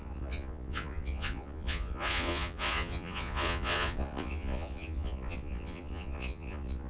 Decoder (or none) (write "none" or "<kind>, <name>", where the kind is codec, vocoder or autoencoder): vocoder, Vocos